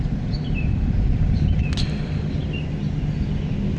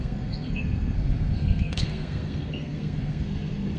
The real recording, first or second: first